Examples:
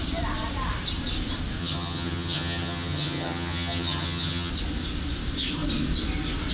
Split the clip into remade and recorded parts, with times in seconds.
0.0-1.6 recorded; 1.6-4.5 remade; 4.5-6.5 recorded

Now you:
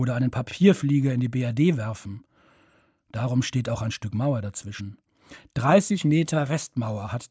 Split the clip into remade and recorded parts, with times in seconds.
0.0-5.7 recorded; 5.7-6.6 remade; 6.6-7.3 recorded

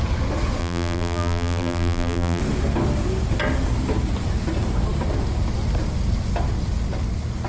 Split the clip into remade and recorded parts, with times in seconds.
0.0-0.6 recorded; 0.6-2.4 remade; 2.4-7.5 recorded

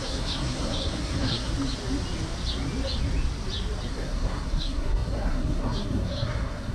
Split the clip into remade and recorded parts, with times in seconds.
0.0-1.5 remade; 1.5-3.9 recorded; 3.9-6.7 remade

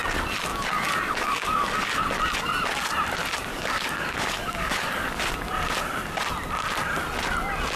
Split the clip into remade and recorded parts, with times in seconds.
0.0-0.5 recorded; 0.5-2.0 remade; 2.0-3.5 recorded; 3.5-5.2 remade; 5.2-7.8 recorded

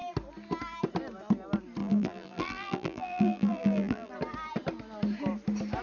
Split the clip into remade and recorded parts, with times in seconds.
0.0-1.8 recorded; 1.8-4.1 remade; 4.1-5.8 recorded

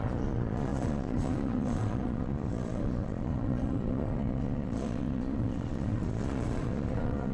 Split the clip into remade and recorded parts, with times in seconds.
0.0-7.3 remade